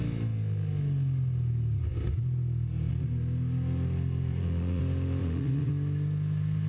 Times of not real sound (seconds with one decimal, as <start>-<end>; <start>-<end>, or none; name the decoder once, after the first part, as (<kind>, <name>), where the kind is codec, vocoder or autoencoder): 4.3-4.8 (vocoder, Vocos); 5.2-5.7